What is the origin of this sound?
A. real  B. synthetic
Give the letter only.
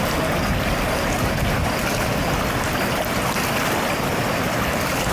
A